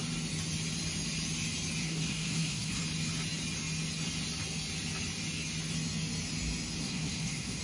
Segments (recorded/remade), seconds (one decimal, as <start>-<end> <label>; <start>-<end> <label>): 0.0-1.8 recorded; 1.8-2.8 remade; 2.8-6.8 recorded; 6.8-7.6 remade